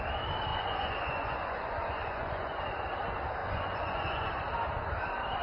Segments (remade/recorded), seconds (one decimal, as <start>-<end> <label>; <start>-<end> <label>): 0.0-0.5 recorded; 0.5-2.6 remade; 2.6-3.4 recorded; 3.4-4.4 remade; 4.4-5.4 recorded